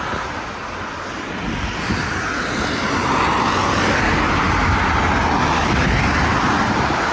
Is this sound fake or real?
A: real